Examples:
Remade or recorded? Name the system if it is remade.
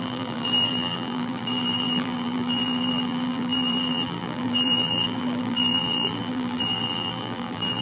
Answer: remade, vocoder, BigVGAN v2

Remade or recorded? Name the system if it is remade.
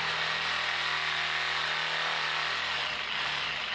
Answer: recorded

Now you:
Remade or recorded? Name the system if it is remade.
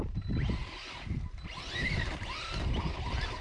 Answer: recorded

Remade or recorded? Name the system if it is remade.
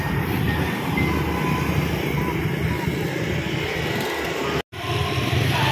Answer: recorded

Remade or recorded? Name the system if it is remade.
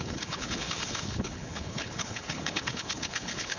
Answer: remade, codec, HILCodec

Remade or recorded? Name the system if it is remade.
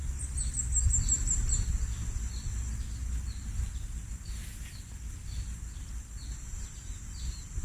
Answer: recorded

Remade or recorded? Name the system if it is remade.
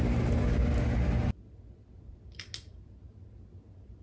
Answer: recorded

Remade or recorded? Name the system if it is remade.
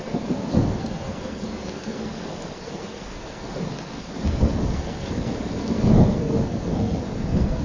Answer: remade, codec, SNAC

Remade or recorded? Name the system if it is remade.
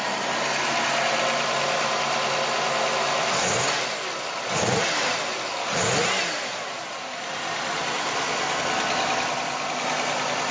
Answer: recorded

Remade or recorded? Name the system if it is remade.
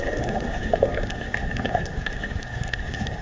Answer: remade, codec, SNAC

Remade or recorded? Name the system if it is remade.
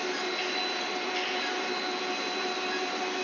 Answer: recorded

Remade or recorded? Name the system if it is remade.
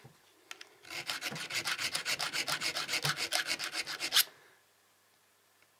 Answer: recorded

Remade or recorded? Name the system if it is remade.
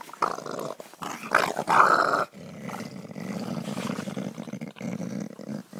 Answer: recorded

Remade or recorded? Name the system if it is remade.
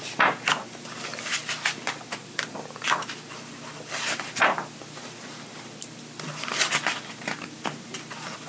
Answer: remade, vocoder, BigVGAN v2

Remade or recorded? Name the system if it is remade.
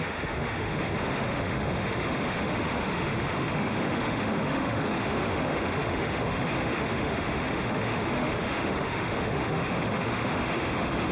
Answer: remade, autoencoder, DAC-VAE